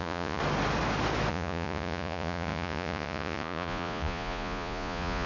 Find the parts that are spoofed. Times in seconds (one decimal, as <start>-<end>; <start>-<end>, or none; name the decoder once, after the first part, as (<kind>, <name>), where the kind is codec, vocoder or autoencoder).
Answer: 0.0-0.4 (vocoder, Vocos); 1.3-5.3